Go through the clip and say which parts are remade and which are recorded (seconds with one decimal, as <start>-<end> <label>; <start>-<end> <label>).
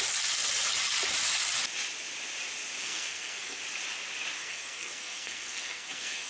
0.0-2.8 recorded; 2.8-3.6 remade; 3.6-4.4 recorded; 4.4-6.3 remade